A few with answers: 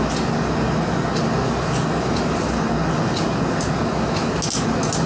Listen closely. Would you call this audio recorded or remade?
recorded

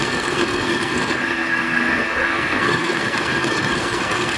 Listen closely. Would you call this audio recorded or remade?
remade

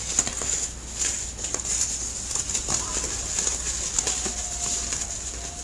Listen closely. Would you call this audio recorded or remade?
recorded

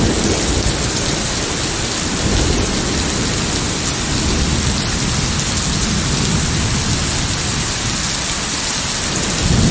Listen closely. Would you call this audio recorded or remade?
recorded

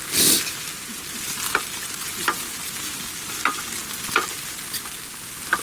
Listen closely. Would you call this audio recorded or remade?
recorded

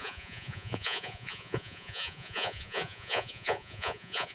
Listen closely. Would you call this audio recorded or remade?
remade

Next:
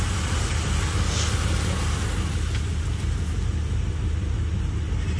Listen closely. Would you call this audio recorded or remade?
recorded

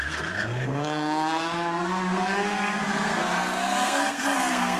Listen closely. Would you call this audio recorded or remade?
remade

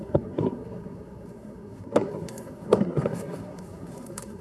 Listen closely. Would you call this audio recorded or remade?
remade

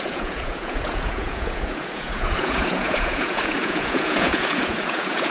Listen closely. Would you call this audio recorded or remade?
remade